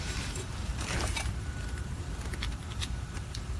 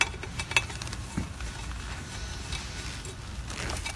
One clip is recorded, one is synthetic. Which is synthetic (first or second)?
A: first